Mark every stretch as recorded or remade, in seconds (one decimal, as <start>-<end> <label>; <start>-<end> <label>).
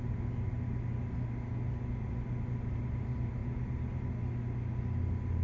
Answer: 0.0-5.4 recorded